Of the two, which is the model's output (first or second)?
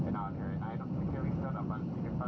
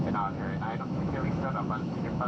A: second